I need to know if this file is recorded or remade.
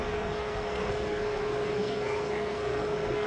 remade